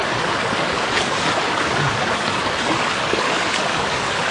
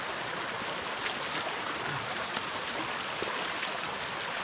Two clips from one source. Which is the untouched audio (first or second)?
second